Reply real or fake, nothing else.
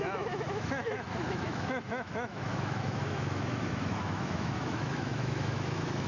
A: fake